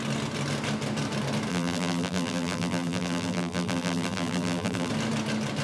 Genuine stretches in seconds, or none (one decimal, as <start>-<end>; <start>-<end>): 0.0-1.5; 4.9-5.6